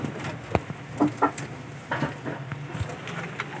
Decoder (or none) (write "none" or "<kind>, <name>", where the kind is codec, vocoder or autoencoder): none